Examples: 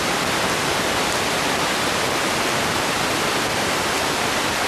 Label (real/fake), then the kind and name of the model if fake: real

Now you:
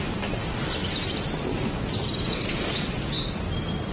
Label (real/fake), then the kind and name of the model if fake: fake, vocoder, BigVGAN v2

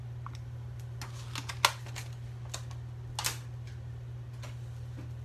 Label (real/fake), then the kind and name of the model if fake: real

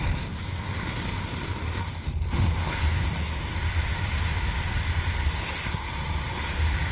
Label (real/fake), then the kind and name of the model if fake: real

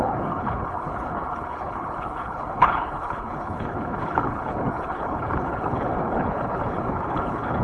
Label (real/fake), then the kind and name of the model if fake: fake, codec, HILCodec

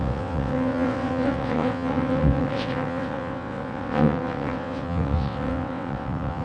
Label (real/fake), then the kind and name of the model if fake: fake, vocoder, WaveNeXt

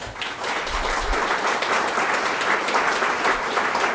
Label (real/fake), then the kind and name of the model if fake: real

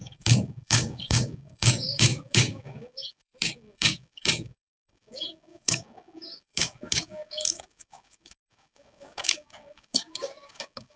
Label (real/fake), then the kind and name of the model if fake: fake, codec, DAC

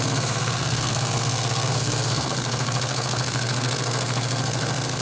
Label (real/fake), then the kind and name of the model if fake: fake, codec, SNAC